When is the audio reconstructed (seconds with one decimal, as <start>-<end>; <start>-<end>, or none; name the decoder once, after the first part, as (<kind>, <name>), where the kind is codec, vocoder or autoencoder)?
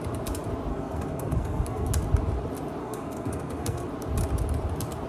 0.7-1.9 (codec, SNAC); 2.8-3.9